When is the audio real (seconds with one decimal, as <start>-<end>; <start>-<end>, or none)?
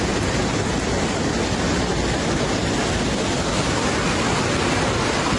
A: 0.0-5.4